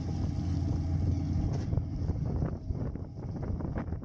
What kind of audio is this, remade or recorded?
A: recorded